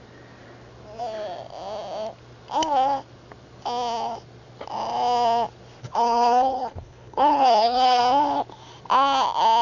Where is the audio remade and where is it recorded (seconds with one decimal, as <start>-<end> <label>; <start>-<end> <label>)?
0.0-5.8 recorded; 5.8-8.0 remade; 8.0-9.6 recorded